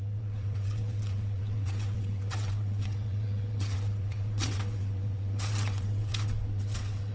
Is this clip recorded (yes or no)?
no